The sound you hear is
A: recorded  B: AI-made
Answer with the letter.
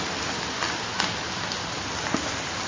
A